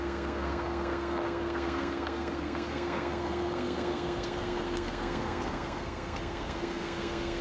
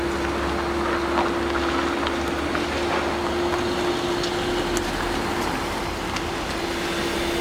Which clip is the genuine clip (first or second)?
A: second